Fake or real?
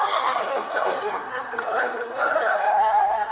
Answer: fake